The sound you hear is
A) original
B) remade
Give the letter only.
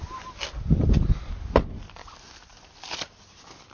A